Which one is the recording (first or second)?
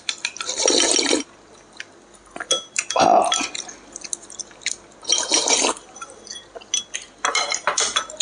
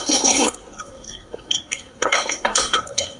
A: first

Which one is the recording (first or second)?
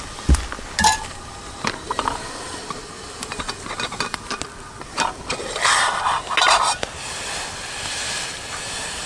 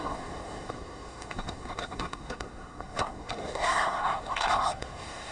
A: first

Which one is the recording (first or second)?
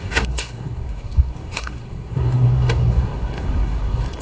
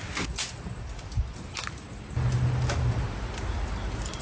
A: second